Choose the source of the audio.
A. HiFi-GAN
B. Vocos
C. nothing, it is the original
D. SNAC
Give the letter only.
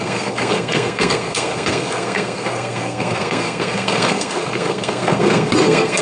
D